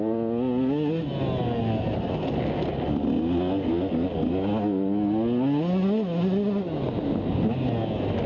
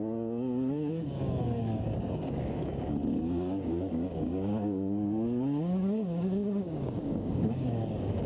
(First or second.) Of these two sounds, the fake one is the second